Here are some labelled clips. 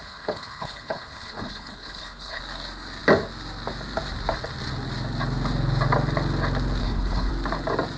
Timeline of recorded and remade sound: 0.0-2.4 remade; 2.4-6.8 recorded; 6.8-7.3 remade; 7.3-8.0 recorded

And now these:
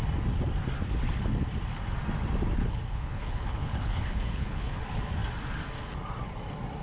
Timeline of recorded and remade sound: 0.0-2.6 recorded; 2.6-4.8 remade; 4.8-6.8 recorded

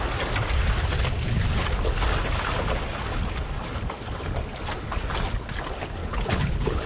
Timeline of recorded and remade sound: 0.0-6.0 recorded; 6.0-6.9 remade

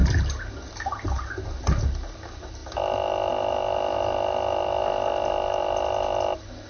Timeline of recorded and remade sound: 0.0-6.7 recorded

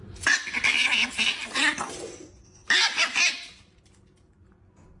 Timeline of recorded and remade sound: 0.0-5.0 recorded

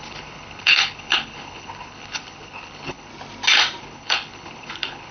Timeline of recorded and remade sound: 0.0-3.1 remade; 3.1-3.8 recorded; 3.8-5.1 remade